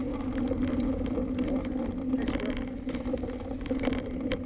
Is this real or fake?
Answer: real